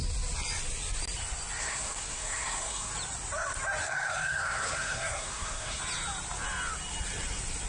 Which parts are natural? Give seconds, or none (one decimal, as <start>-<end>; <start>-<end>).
0.0-1.6; 2.9-3.8; 5.8-7.7